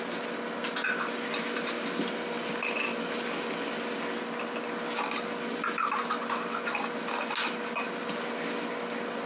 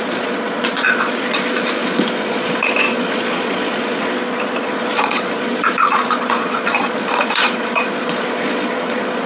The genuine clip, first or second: first